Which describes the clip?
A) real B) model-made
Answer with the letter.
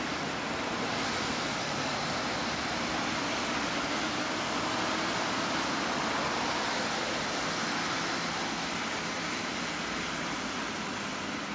A